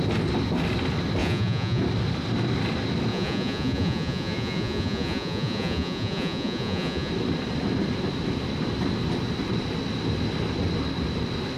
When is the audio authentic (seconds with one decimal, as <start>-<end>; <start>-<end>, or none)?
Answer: 0.0-1.2; 1.8-3.1; 7.1-11.6